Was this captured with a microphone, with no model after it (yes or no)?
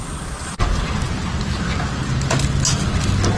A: yes